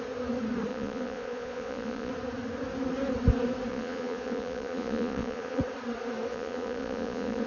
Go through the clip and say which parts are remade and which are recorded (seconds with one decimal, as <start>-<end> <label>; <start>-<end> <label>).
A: 0.0-0.7 recorded; 0.7-2.1 remade; 2.1-3.7 recorded; 3.7-5.6 remade; 5.6-6.3 recorded; 6.3-7.5 remade